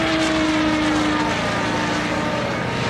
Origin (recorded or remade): recorded